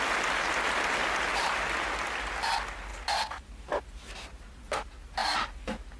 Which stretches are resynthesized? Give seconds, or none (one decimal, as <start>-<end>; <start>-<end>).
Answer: none